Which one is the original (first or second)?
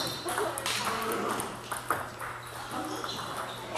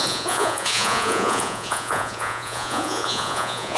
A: first